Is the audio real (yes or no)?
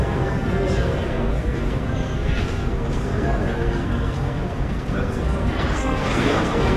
no